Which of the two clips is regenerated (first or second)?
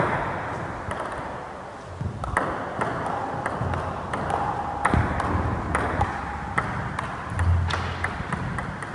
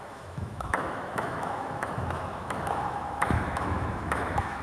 second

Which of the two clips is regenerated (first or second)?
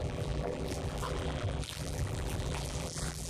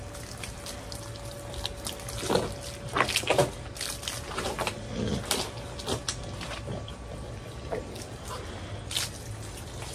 first